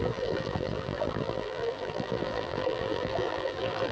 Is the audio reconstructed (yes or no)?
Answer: yes